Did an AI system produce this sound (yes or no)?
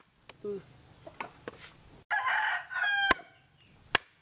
no